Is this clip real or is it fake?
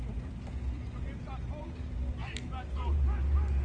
real